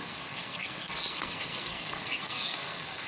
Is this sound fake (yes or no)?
yes